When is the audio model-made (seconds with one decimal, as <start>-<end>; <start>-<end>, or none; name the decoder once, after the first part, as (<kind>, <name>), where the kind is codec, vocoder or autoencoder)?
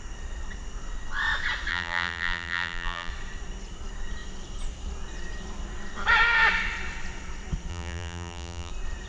1.7-3.1 (vocoder, BigVGAN v2); 7.7-8.7